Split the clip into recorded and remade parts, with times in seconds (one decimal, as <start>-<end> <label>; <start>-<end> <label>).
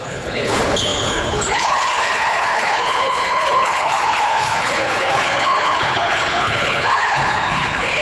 0.0-8.0 remade